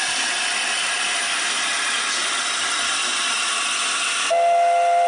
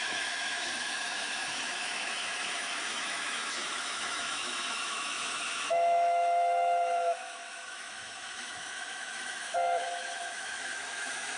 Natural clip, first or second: first